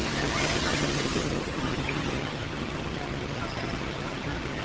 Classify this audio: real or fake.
fake